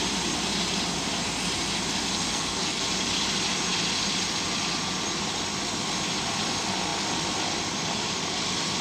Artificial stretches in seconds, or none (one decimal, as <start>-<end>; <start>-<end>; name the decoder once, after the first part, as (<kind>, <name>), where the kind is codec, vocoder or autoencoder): 2.2-2.8 (codec, SNAC)